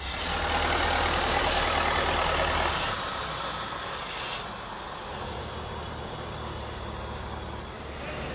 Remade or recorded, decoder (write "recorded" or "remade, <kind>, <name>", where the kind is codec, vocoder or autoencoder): recorded